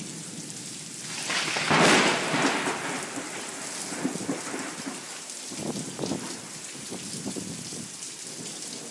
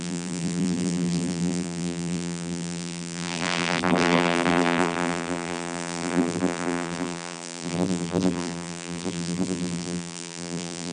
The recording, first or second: first